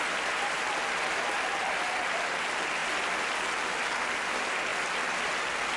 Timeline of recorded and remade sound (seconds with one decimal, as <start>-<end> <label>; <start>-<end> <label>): 0.0-4.7 recorded; 4.7-5.3 remade; 5.3-5.8 recorded